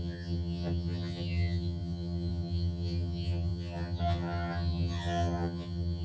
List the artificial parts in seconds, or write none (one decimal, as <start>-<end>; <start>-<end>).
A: 0.0-6.0

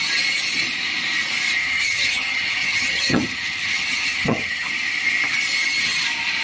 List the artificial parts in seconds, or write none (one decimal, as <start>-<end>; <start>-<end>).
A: 1.6-4.7

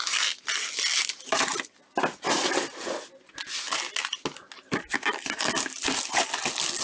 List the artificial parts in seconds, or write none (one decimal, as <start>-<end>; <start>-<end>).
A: none

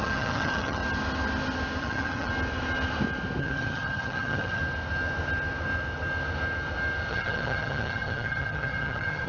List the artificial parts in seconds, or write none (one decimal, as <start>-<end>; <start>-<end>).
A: 0.0-0.8; 1.8-2.3; 3.4-4.6; 7.1-9.3

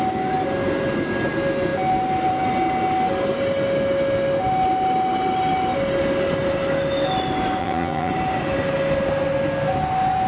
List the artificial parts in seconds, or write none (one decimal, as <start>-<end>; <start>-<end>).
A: 7.6-8.1

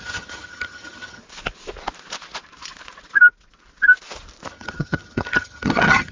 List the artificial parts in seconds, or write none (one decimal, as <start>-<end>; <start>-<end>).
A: 0.0-1.2; 4.5-6.1